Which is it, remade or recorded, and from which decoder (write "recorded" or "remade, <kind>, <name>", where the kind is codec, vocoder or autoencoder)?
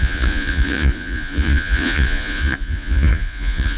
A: remade, vocoder, Vocos